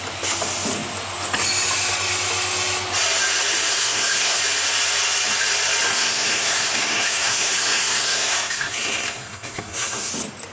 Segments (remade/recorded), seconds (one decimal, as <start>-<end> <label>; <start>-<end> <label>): 0.0-3.7 recorded; 3.7-4.4 remade; 4.4-5.9 recorded; 5.9-10.1 remade; 10.1-10.5 recorded